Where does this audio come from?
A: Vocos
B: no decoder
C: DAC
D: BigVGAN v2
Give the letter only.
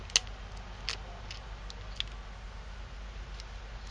B